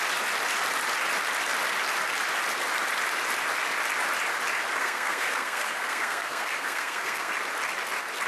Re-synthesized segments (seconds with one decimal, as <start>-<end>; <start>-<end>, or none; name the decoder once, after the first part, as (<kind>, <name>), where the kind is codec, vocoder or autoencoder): 4.8-7.3 (codec, SNAC)